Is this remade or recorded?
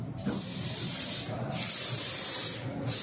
recorded